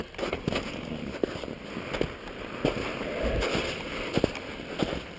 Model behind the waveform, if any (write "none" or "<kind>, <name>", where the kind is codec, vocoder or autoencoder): none